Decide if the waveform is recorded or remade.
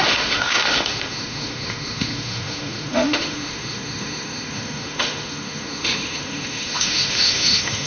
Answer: remade